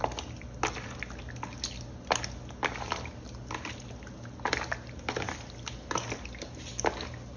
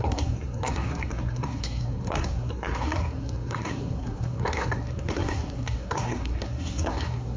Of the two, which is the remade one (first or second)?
second